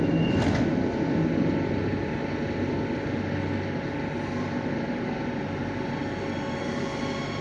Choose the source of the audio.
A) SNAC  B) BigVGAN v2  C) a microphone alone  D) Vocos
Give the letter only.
C